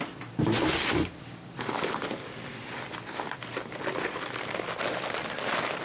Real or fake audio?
real